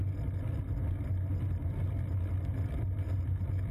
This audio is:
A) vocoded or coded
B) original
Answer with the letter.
B